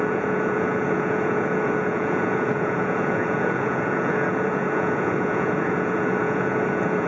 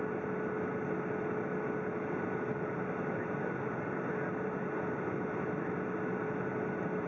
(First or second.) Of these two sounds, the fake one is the first